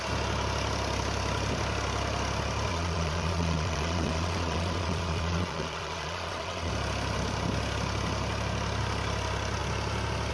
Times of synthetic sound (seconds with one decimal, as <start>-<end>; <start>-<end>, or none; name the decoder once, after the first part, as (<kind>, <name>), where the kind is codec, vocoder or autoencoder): 2.7-6.7 (vocoder, Vocos)